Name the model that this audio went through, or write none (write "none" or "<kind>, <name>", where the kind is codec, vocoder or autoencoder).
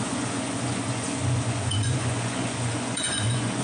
vocoder, Vocos